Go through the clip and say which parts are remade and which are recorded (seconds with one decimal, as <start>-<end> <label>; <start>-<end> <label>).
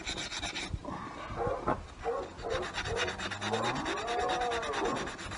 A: 0.0-5.4 recorded